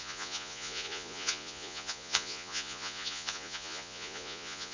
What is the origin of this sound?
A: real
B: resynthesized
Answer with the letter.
B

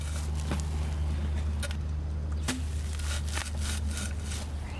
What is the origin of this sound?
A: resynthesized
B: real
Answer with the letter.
B